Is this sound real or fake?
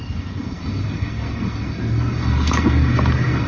fake